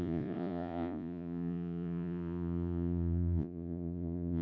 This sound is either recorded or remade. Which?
remade